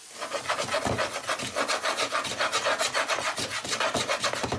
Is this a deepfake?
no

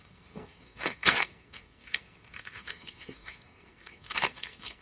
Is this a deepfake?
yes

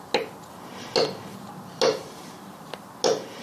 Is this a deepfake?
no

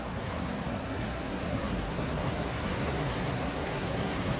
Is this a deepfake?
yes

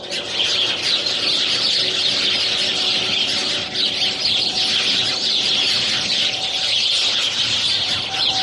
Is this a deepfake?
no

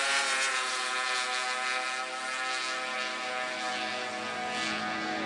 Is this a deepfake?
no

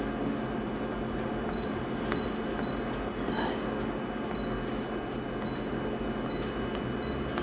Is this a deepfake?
no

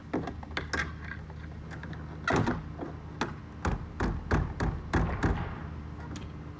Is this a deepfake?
no